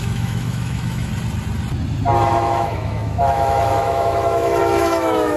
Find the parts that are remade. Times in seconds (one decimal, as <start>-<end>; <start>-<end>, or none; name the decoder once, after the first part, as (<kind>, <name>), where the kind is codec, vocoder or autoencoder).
0.0-1.1 (autoencoder, DAC-VAE); 2.3-5.4

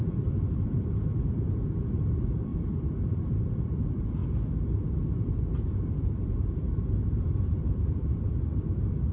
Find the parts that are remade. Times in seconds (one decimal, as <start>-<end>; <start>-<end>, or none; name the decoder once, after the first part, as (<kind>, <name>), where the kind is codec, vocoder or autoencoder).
0.0-4.2 (vocoder, BigVGAN v2); 4.7-9.1

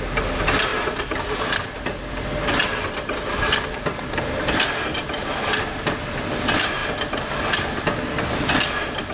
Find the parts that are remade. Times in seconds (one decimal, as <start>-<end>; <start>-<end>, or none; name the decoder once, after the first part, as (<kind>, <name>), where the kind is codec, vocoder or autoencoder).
0.7-1.4 (vocoder, BigVGAN v2)

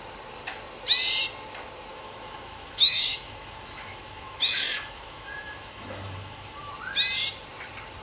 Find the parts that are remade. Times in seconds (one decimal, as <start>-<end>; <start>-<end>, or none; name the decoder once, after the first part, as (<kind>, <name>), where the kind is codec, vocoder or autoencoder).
1.9-6.7 (autoencoder, DAC-VAE)

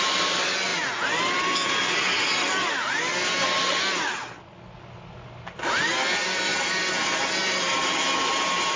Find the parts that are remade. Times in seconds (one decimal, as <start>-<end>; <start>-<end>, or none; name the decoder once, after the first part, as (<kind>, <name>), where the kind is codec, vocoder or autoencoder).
none

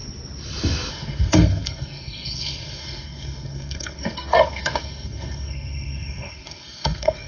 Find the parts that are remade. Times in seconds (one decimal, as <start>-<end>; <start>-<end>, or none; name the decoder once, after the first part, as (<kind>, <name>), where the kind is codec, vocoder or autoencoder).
0.9-7.3 (codec, SNAC)